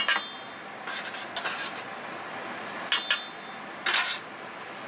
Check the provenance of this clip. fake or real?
real